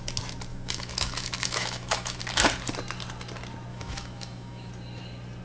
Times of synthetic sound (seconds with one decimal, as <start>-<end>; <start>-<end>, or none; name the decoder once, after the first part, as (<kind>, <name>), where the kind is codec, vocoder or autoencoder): 0.5-2.2 (autoencoder, DAC-VAE); 3.7-4.7